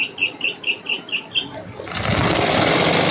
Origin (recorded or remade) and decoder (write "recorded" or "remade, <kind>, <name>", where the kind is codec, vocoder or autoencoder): recorded